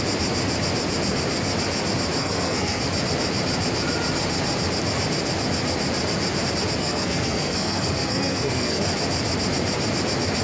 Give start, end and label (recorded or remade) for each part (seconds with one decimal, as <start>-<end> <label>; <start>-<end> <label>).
0.0-2.2 recorded; 2.2-2.8 remade; 2.8-6.8 recorded; 6.8-8.8 remade; 8.8-10.4 recorded